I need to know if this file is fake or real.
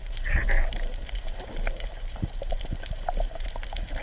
fake